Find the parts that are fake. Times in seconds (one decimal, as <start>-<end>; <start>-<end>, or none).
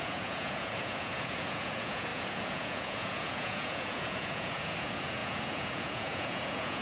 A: 0.0-6.8